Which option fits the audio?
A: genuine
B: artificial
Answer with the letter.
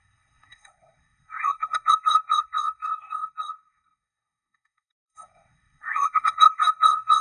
B